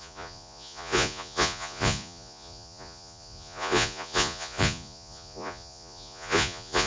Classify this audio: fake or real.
fake